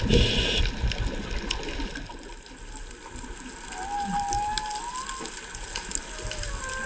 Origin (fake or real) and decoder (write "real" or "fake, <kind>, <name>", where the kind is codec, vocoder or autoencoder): real